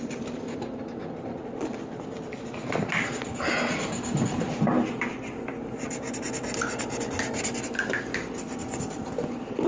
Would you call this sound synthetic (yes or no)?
no